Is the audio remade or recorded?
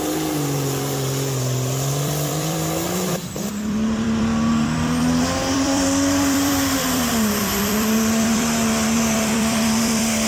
remade